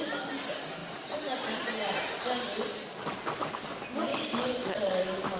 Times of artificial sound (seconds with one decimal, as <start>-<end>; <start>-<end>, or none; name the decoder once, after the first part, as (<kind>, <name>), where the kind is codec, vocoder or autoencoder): 0.8-2.2 (vocoder, BigVGAN v2); 4.1-4.9